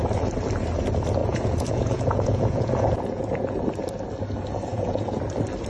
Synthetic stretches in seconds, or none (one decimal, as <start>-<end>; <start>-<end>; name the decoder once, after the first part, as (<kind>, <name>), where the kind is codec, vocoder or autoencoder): 1.2-3.6 (vocoder, Vocos); 4.7-5.2